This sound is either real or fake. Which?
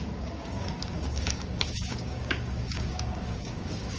fake